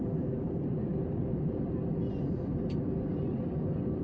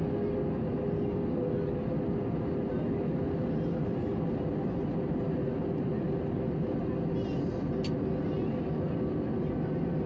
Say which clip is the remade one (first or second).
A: first